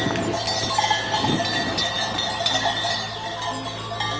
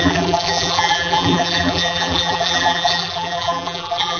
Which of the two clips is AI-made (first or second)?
second